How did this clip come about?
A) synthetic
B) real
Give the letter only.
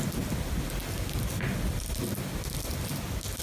B